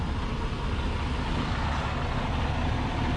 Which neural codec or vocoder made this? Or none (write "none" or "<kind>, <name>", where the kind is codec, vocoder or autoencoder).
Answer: none